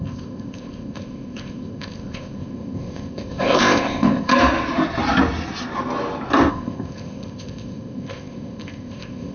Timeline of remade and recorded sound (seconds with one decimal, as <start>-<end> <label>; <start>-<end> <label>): 0.0-4.3 remade; 4.3-6.5 recorded; 6.5-9.3 remade